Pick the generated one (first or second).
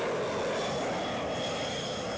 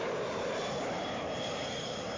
second